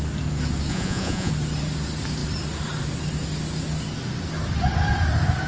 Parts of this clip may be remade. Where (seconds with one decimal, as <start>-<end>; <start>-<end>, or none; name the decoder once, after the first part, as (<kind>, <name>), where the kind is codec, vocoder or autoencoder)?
0.7-1.3 (vocoder, Vocos)